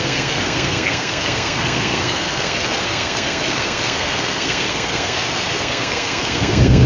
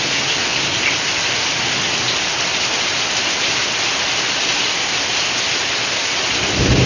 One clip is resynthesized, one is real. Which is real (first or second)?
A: second